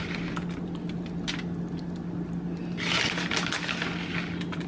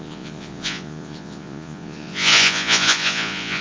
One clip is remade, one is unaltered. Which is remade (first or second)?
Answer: second